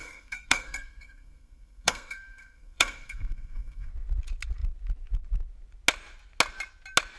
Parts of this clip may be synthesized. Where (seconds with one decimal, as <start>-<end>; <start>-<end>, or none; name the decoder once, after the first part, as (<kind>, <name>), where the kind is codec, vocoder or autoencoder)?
0.0-3.9 (codec, SNAC)